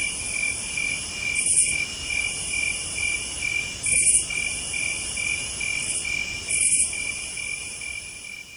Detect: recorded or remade recorded